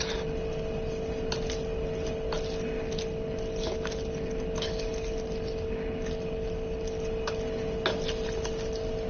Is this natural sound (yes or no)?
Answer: yes